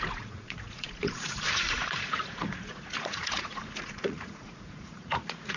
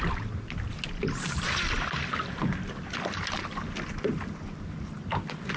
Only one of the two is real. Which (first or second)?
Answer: second